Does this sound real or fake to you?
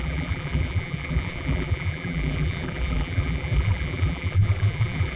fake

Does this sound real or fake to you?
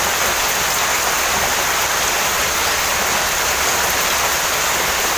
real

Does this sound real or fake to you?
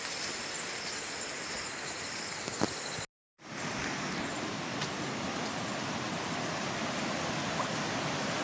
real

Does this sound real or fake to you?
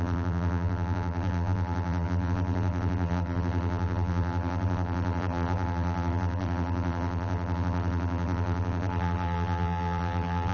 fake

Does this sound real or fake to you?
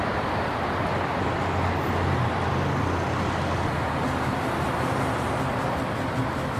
real